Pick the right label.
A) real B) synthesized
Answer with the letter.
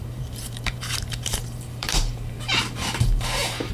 B